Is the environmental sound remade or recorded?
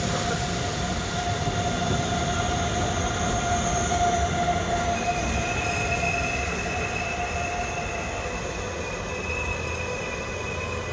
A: recorded